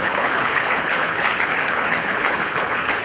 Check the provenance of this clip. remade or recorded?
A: remade